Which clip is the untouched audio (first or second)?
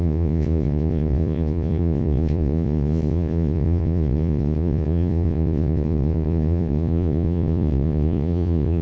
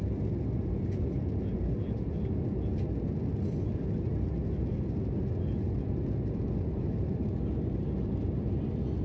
second